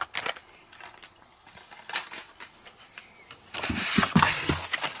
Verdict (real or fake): real